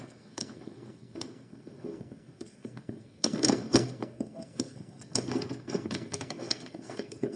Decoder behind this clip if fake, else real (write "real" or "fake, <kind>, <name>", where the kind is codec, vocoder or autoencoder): fake, codec, SNAC